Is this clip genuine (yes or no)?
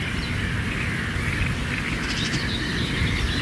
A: yes